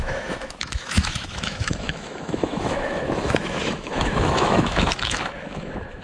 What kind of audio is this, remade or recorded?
remade